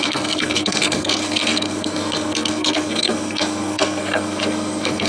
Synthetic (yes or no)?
yes